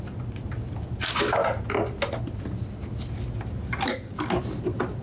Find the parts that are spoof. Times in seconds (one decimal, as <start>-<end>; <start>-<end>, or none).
none